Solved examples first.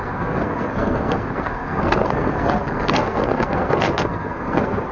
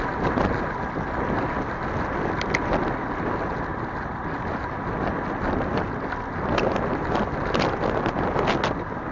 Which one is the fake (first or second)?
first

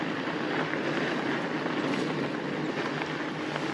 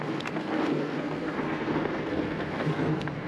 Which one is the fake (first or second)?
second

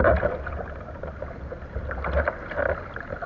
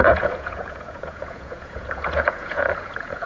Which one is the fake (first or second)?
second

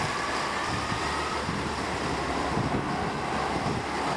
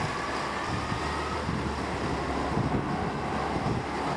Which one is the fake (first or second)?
first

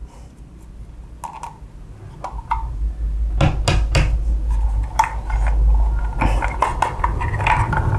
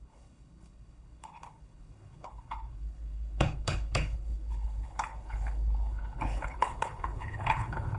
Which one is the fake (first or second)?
second